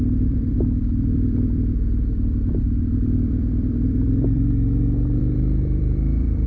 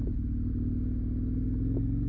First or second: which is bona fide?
second